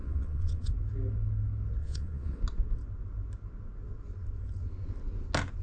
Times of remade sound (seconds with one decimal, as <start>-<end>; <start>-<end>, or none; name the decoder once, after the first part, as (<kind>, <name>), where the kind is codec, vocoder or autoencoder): 0.0-0.7 (vocoder, Vocos); 1.8-2.4